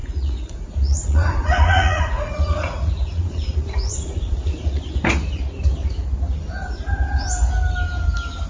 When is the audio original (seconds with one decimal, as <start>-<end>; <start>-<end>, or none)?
4.8-8.5